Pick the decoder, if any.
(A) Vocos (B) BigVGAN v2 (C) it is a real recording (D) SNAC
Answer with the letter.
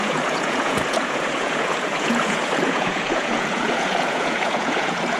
A